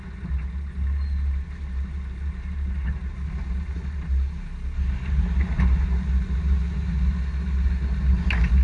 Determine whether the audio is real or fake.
real